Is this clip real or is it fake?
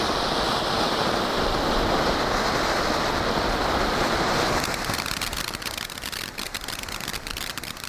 real